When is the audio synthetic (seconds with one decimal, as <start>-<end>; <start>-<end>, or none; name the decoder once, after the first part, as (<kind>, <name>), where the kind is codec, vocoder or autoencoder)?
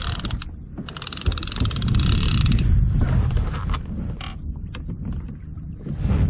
1.8-5.6 (vocoder, BigVGAN v2)